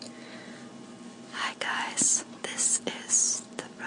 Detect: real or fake real